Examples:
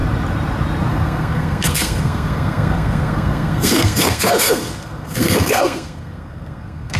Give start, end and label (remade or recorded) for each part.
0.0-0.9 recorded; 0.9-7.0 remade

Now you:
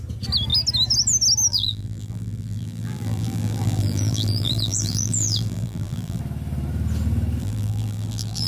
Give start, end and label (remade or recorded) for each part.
0.0-1.5 recorded; 1.5-6.2 remade; 6.2-7.4 recorded; 7.4-8.5 remade

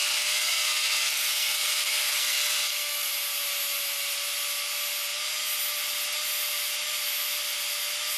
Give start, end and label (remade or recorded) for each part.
0.0-3.1 remade; 3.1-8.2 recorded

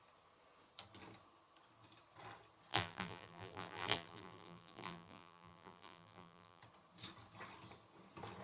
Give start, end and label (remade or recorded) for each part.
0.0-2.7 recorded; 2.7-6.6 remade; 6.6-8.4 recorded

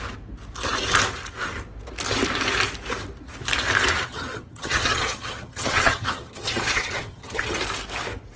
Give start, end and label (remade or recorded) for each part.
0.0-3.9 recorded; 3.9-7.6 remade; 7.6-8.4 recorded